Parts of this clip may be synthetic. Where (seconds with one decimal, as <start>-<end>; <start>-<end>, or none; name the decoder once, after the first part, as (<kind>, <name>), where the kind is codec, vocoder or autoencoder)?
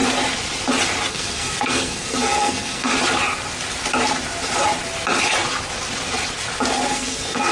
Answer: 1.1-2.9 (codec, SNAC); 6.9-7.5